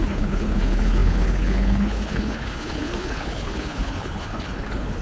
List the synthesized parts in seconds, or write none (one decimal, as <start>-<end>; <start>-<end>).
0.0-5.0